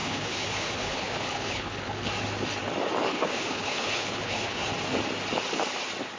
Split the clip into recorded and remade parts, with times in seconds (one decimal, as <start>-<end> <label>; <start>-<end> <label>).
0.0-2.1 remade; 2.1-3.1 recorded; 3.1-4.7 remade; 4.7-6.2 recorded